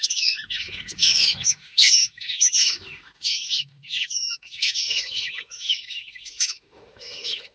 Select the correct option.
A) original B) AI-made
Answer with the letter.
B